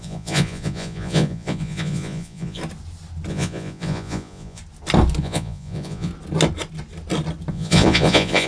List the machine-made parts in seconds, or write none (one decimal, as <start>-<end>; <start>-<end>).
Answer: 0.0-2.6; 3.3-4.6; 5.2-6.1; 7.5-8.5